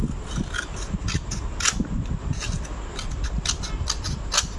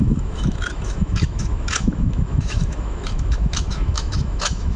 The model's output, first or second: second